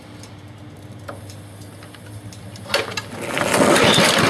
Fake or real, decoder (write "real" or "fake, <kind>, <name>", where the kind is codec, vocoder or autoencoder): real